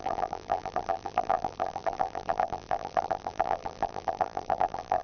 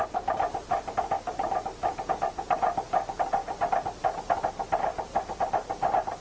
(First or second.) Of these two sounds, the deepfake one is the first